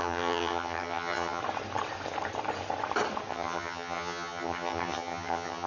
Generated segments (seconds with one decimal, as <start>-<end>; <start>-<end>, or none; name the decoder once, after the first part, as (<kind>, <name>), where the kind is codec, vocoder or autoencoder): 0.0-1.4 (vocoder, HiFi-GAN); 3.3-5.7